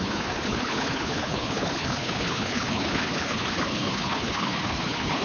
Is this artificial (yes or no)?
yes